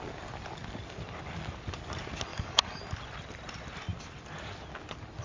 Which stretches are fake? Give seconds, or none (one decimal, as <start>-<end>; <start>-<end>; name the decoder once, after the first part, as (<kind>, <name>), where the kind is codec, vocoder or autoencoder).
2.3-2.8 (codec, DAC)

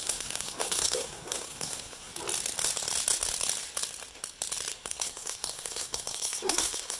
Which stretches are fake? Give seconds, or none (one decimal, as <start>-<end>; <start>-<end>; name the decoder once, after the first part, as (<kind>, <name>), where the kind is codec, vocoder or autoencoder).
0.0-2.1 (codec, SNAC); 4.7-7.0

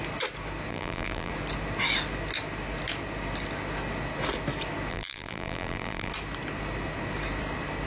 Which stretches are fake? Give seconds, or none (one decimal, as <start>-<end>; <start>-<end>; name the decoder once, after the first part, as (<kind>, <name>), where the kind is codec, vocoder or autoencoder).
0.7-1.3 (vocoder, BigVGAN v2); 4.9-6.1

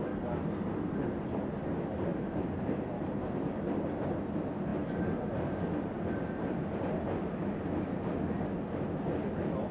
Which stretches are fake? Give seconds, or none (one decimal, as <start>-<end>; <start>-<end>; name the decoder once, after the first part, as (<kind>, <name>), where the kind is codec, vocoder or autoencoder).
2.1-3.3 (vocoder, BigVGAN v2)